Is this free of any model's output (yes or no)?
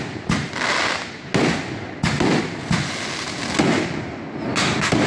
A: yes